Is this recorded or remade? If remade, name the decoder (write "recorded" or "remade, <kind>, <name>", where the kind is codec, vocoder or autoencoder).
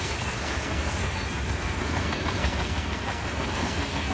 remade, codec, SNAC